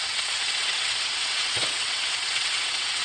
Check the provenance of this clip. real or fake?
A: fake